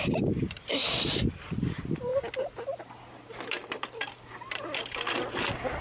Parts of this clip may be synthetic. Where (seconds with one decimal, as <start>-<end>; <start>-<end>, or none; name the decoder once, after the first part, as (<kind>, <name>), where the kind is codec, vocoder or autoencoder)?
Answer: none